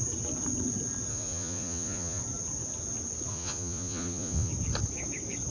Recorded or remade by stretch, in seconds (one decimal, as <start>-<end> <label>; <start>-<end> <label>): 0.0-1.1 recorded; 1.1-2.2 remade; 2.2-3.3 recorded; 3.3-4.5 remade; 4.5-5.5 recorded